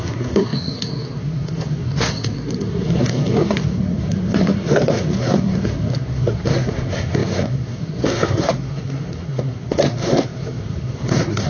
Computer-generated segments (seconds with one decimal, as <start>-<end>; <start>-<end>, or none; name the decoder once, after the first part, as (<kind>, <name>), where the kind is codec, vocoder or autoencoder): 0.0-11.5 (codec, SNAC)